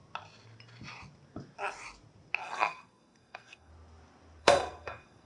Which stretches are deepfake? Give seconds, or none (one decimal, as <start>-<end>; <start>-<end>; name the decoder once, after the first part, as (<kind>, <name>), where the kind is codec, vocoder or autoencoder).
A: 2.4-3.7 (codec, SNAC); 4.4-5.3

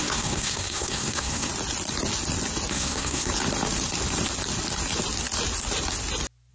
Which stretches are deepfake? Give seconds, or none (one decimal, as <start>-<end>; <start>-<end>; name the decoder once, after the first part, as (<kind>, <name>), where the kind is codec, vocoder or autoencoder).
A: 0.0-1.5 (codec, SNAC); 2.7-3.3